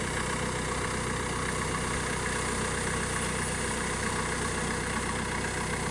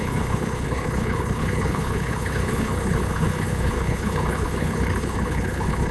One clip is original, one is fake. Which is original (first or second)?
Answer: first